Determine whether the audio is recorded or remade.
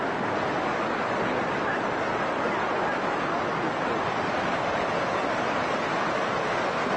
recorded